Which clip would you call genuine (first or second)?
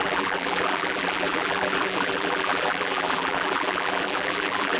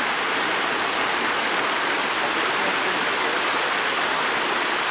second